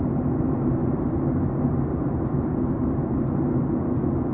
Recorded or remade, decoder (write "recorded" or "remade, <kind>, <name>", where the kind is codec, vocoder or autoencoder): recorded